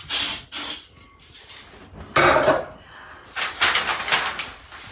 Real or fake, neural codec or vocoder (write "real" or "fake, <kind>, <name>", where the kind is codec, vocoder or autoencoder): real